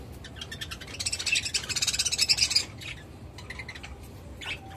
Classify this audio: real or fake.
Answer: real